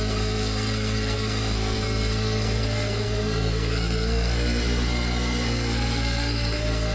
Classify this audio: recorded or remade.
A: remade